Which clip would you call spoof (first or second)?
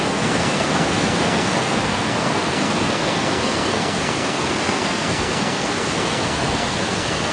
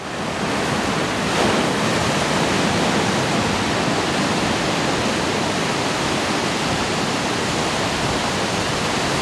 first